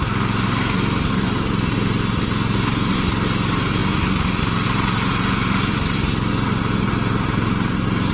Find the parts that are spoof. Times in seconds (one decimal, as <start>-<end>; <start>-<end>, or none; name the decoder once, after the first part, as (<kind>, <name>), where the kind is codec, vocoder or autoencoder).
none